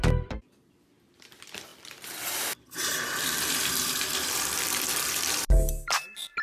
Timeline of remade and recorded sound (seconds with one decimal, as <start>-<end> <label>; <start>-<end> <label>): 0.0-6.4 remade